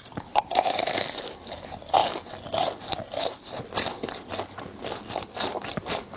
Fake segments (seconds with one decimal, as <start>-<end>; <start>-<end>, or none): 0.0-2.0; 5.7-6.2